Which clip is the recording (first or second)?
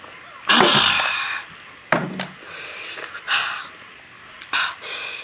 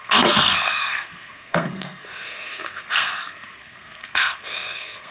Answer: first